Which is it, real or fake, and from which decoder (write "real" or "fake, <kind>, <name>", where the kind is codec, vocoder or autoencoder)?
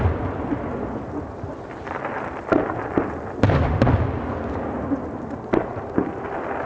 fake, vocoder, BigVGAN v2